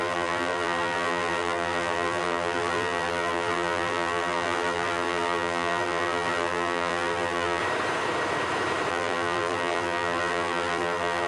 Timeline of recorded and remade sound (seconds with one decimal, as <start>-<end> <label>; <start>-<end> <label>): 0.0-7.6 remade; 7.6-8.9 recorded; 8.9-11.3 remade